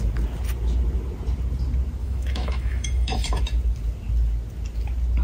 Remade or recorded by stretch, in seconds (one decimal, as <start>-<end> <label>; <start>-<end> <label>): 0.0-2.0 recorded; 2.0-3.4 remade; 3.4-5.2 recorded